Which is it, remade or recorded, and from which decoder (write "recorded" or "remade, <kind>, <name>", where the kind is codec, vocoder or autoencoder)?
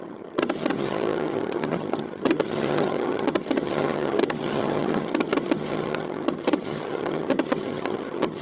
remade, vocoder, HiFi-GAN